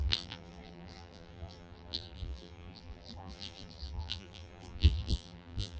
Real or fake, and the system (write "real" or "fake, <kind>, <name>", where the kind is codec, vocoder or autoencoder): fake, vocoder, BigVGAN v2